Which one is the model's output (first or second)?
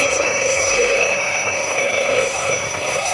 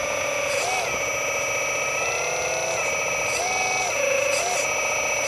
first